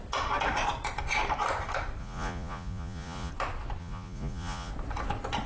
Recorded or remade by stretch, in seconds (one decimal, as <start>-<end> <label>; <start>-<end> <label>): 0.0-2.0 recorded; 2.0-3.3 remade; 3.3-3.8 recorded; 3.8-4.7 remade; 4.7-5.5 recorded